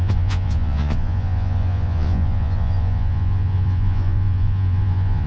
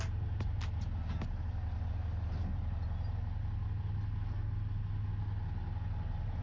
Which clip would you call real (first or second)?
second